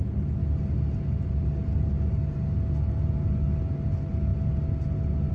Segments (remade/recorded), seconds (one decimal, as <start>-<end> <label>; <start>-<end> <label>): 0.0-5.3 recorded